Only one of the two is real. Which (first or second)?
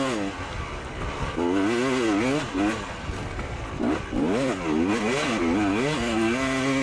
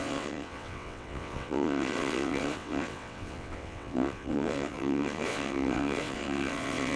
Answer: first